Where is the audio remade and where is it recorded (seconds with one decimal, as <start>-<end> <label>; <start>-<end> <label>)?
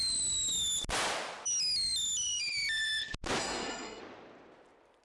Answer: 0.0-3.4 recorded; 3.4-4.0 remade; 4.0-5.0 recorded